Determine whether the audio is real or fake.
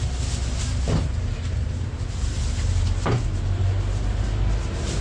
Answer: real